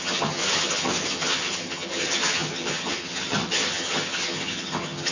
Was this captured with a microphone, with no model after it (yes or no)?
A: no